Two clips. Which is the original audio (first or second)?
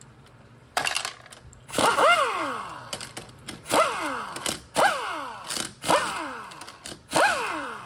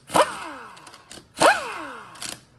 second